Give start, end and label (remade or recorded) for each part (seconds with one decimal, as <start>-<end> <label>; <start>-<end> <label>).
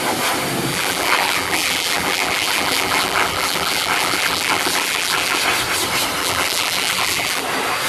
0.0-0.7 recorded; 0.7-5.4 remade; 5.4-6.2 recorded; 6.2-7.4 remade; 7.4-7.9 recorded